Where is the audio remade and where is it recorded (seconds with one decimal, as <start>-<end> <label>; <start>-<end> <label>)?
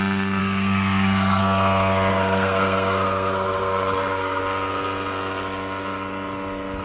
0.0-0.4 recorded; 0.4-1.4 remade; 1.4-2.1 recorded; 2.1-4.4 remade; 4.4-6.8 recorded